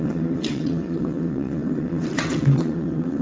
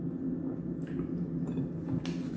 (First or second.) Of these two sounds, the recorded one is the second